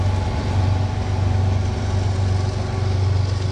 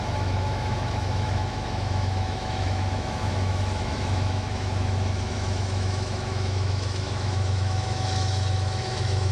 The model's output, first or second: second